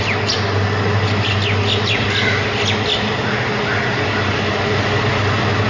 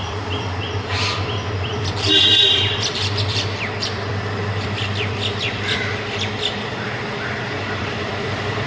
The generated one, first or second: second